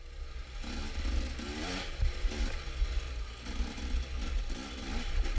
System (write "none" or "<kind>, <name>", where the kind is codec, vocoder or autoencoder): none